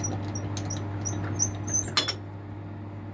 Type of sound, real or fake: real